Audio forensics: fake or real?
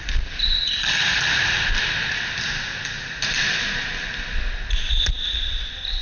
real